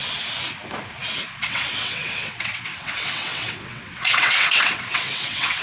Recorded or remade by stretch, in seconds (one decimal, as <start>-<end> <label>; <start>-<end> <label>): 0.0-1.4 recorded; 1.4-5.6 remade